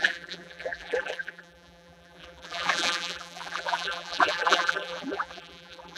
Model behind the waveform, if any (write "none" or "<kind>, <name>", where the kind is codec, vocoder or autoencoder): vocoder, BigVGAN v2